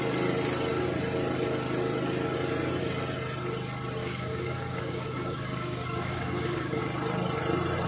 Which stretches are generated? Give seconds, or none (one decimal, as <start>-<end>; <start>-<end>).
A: 4.0-6.8